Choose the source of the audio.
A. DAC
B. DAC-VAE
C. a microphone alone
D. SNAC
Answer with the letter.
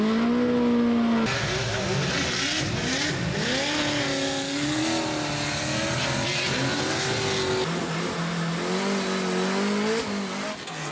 C